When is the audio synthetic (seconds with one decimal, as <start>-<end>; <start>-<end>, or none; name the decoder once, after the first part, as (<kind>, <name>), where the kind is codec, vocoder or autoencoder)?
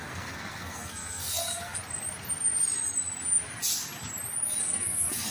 0.0-1.8 (codec, SNAC); 4.6-5.3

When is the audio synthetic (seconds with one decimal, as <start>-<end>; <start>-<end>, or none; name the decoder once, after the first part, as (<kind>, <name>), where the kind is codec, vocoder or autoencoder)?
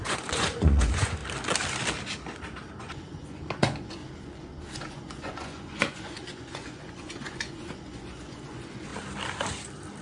0.0-1.2 (vocoder, Vocos); 2.8-4.0; 4.9-8.9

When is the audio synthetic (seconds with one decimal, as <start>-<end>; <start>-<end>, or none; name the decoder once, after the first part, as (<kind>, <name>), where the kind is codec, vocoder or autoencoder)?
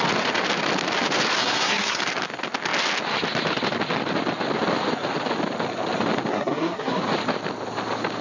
1.4-2.0 (codec, SNAC); 6.3-7.0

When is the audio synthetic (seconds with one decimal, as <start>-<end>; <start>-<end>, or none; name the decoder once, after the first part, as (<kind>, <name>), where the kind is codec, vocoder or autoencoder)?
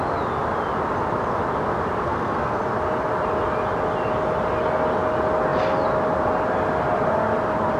2.0-2.6 (codec, SNAC)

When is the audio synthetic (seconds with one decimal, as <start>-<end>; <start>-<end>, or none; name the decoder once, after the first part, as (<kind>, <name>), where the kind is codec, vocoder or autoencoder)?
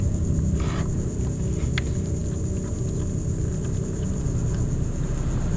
none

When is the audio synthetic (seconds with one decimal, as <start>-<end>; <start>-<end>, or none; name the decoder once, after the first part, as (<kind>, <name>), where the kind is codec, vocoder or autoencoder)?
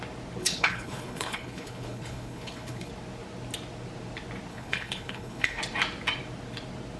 0.4-2.9 (codec, HILCodec); 4.5-5.6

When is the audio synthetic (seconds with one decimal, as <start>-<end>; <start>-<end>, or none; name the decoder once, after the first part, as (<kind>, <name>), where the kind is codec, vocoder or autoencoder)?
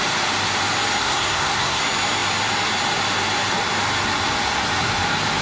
1.0-1.8 (codec, SNAC)